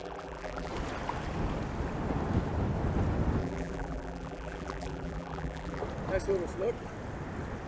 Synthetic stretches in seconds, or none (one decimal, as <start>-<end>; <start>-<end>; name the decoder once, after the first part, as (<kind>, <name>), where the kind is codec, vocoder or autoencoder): 0.0-0.7 (vocoder, BigVGAN v2); 3.4-5.8